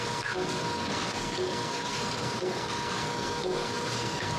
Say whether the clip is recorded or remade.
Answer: remade